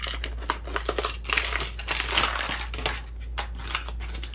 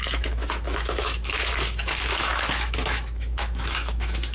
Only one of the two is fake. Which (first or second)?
second